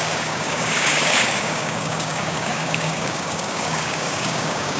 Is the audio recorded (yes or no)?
no